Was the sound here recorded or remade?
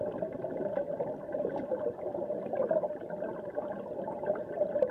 recorded